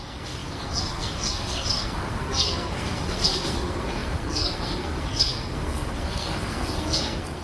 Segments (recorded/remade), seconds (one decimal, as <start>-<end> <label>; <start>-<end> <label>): 0.0-7.4 remade